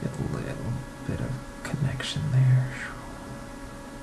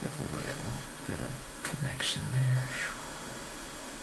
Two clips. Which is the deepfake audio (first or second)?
second